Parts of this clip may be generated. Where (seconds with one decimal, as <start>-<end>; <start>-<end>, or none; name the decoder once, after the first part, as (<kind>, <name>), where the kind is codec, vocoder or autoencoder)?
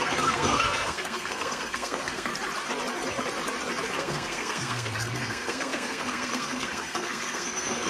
0.0-2.3 (codec, SNAC); 4.0-7.9